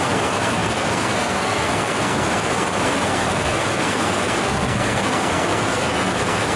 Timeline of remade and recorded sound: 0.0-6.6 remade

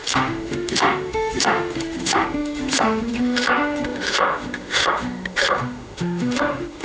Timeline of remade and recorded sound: 0.0-6.8 remade

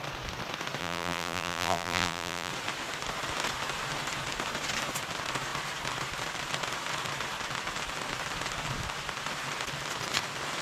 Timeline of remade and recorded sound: 0.0-0.8 recorded; 0.8-2.5 remade; 2.5-10.6 recorded

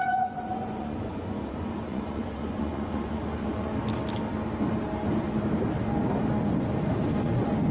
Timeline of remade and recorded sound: 0.0-3.7 remade; 3.7-7.2 recorded; 7.2-7.7 remade

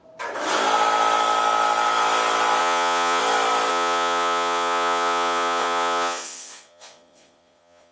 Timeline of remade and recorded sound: 0.0-2.6 recorded; 2.6-3.2 remade; 3.2-3.7 recorded; 3.7-7.9 remade

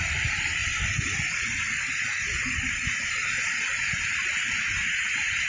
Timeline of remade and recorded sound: 0.0-0.6 remade; 0.6-3.9 recorded; 3.9-5.5 remade

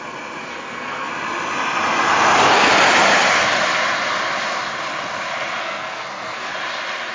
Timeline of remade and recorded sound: 0.0-0.4 recorded; 0.4-1.1 remade; 1.1-5.6 recorded; 5.6-6.5 remade; 6.5-7.1 recorded

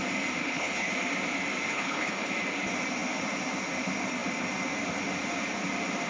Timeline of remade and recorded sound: 0.0-0.4 recorded; 0.4-0.9 remade; 0.9-1.7 recorded; 1.7-2.3 remade; 2.3-6.1 recorded